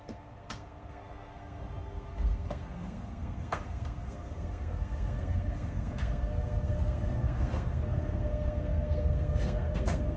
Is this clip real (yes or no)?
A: no